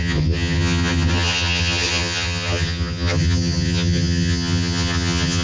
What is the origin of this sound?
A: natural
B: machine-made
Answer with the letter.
B